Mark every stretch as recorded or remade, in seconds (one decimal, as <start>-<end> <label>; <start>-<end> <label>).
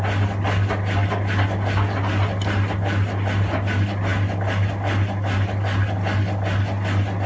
0.0-7.3 recorded